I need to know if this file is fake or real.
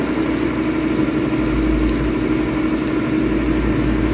real